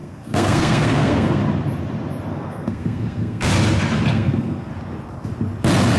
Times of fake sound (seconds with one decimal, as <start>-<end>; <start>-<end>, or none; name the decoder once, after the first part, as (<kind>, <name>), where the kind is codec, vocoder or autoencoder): 0.0-1.4 (codec, SNAC); 2.3-3.5; 4.1-4.7